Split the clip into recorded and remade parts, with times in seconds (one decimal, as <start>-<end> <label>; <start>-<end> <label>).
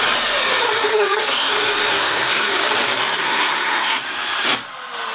0.0-0.9 recorded; 0.9-1.5 remade; 1.5-1.9 recorded; 1.9-2.5 remade; 2.5-3.2 recorded; 3.2-4.0 remade; 4.0-5.1 recorded